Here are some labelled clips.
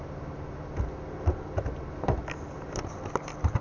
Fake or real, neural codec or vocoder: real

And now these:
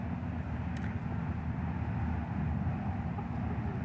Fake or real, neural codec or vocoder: real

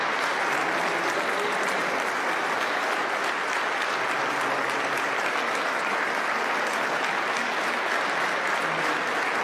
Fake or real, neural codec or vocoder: real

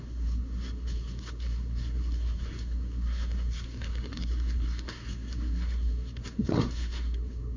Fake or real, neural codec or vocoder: fake, codec, SNAC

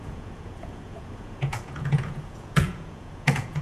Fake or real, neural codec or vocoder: fake, vocoder, Vocos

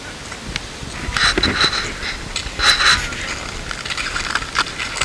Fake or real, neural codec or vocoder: real